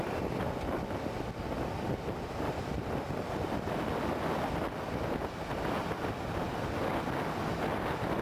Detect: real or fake real